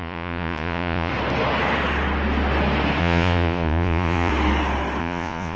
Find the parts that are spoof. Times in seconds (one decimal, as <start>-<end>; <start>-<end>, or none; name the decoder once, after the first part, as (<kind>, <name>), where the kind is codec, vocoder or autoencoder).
0.0-1.1 (vocoder, Vocos); 3.0-4.3; 5.0-5.6